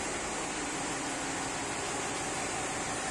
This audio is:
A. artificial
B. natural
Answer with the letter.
B